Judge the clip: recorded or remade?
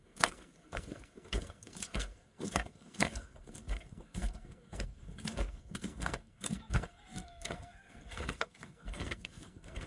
remade